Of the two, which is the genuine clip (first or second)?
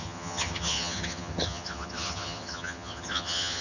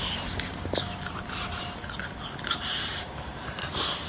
second